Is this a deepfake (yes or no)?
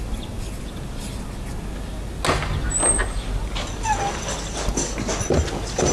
no